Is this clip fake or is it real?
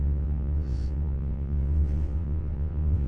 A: fake